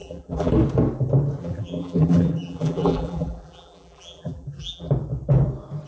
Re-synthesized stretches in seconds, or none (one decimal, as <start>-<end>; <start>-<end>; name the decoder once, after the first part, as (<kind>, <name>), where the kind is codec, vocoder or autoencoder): 0.0-0.5 (vocoder, BigVGAN v2); 1.4-4.9